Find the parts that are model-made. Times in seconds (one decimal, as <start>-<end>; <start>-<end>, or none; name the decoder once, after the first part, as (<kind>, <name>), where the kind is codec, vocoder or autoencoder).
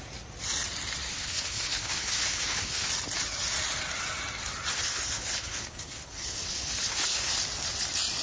1.1-2.9 (codec, HILCodec); 4.7-7.3